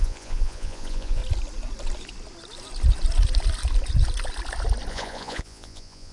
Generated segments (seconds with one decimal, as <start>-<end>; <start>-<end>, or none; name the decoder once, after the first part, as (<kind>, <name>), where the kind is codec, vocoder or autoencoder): 0.0-1.2 (vocoder, Vocos); 4.9-6.1